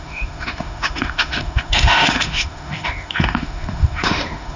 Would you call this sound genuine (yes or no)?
no